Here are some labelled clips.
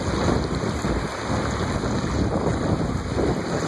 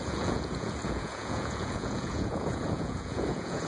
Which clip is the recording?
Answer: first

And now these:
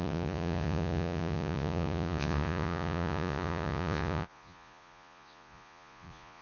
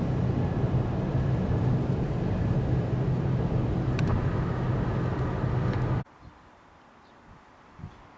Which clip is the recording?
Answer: second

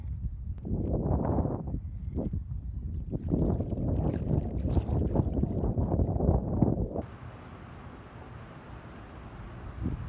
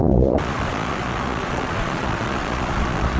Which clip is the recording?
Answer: first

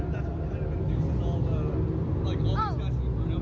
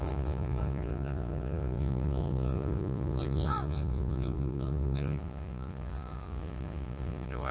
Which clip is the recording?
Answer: first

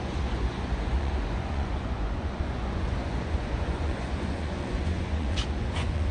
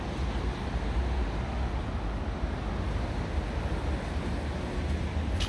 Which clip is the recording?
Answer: second